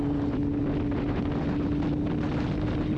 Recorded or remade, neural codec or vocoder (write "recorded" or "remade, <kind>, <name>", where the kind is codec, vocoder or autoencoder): recorded